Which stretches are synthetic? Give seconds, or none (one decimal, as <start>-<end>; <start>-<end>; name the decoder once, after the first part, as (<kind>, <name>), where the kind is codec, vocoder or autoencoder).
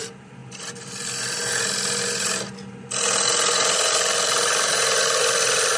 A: none